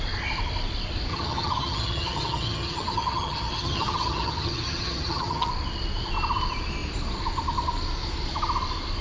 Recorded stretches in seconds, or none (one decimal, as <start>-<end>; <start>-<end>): 0.0-1.1; 5.5-9.0